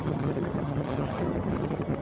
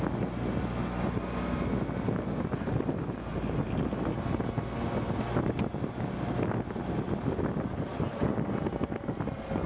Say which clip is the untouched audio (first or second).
second